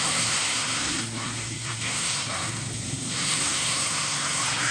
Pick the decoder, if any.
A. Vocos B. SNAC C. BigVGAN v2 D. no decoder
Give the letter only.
B